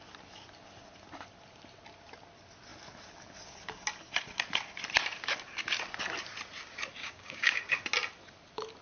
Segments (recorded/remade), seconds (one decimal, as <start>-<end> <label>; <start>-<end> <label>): 0.0-7.0 recorded; 7.0-7.6 remade; 7.6-8.8 recorded